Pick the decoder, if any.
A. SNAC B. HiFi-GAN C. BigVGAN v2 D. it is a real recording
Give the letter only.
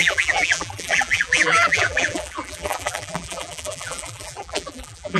C